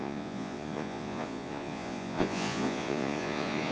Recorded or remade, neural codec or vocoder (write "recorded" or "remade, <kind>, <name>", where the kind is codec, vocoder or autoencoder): remade, vocoder, Vocos